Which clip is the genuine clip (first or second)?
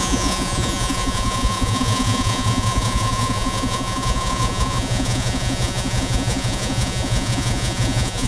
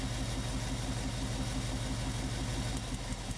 second